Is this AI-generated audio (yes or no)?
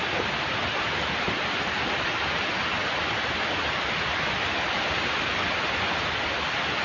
no